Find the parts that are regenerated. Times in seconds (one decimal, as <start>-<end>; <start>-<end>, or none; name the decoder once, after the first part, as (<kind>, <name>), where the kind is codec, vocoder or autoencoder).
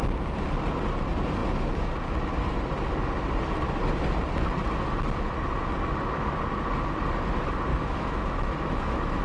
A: 7.7-9.2 (autoencoder, DAC-VAE)